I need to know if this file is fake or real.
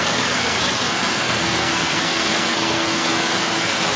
fake